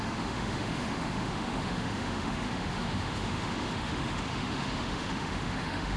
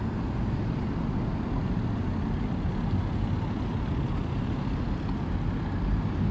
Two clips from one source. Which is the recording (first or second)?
second